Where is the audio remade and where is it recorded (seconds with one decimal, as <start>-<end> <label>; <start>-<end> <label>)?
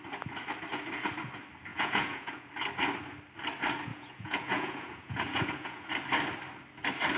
0.0-1.7 recorded; 1.7-2.5 remade; 2.5-3.9 recorded; 3.9-5.9 remade; 5.9-7.2 recorded